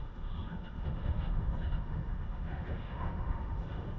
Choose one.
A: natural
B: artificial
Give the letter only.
B